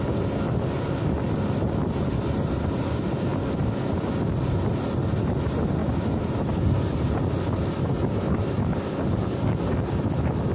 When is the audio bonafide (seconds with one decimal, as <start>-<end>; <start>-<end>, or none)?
0.0-3.3; 4.7-5.8; 7.4-10.5